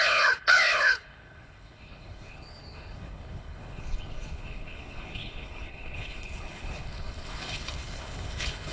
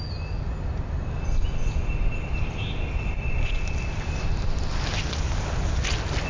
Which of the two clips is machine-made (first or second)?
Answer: first